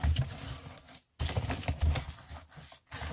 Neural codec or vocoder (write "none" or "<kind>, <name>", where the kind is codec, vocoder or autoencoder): none